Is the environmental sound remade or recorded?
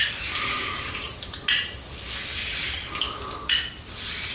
recorded